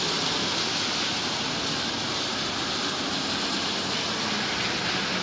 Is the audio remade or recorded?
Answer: recorded